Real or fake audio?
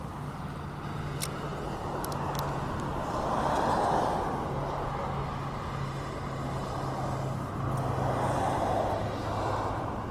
real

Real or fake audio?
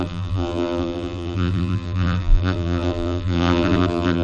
fake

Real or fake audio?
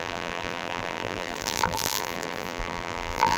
fake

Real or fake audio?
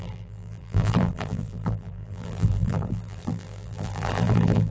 fake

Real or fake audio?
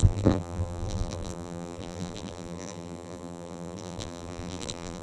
fake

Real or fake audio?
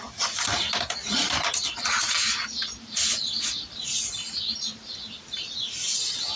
real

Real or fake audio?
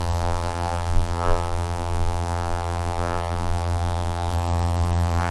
fake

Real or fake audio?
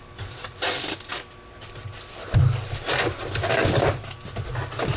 real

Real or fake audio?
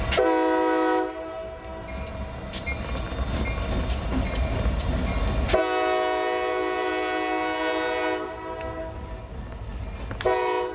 real